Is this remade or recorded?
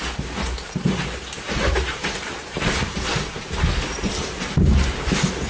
remade